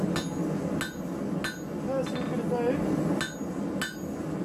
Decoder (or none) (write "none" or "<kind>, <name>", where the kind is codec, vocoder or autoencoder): none